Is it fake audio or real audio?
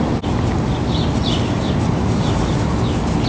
real